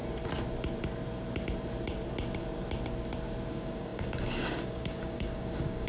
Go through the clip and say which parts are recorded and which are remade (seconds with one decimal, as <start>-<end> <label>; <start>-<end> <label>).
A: 0.0-3.5 recorded; 3.5-5.9 remade